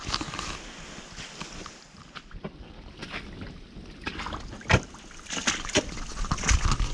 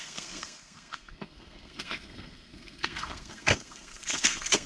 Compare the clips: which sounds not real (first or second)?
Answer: second